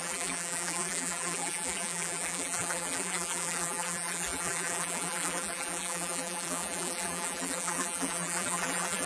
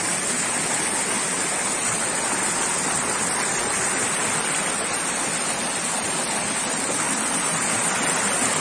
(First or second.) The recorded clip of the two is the second